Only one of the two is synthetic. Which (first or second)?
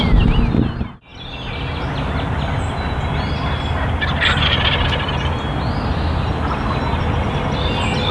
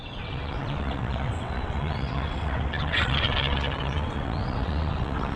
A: second